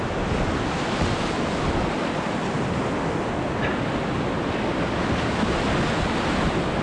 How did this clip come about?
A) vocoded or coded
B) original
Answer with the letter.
B